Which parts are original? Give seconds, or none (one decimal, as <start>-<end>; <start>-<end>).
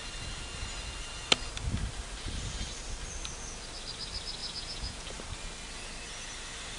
0.0-4.4; 5.1-6.8